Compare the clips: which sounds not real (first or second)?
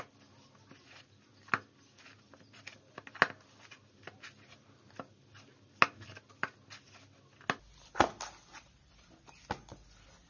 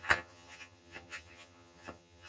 second